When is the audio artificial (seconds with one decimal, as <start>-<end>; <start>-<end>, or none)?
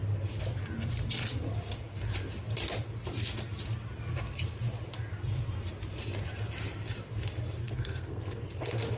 7.6-8.4